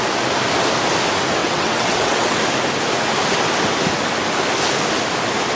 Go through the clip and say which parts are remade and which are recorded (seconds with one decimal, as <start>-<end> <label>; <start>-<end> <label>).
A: 0.0-1.4 recorded; 1.4-2.4 remade; 2.4-5.6 recorded